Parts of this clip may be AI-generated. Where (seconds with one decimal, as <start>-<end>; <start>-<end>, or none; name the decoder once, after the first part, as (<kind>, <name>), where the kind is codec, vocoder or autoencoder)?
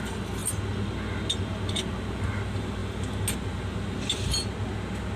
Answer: none